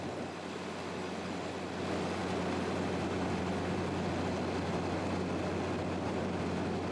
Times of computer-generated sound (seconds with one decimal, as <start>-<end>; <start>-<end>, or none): none